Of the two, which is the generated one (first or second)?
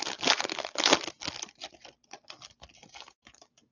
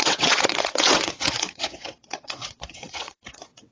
second